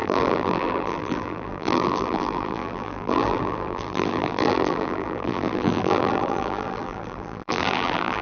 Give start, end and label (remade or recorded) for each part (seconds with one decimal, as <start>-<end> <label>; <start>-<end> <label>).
0.0-8.2 remade